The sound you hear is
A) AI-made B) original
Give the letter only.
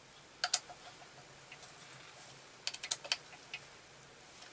B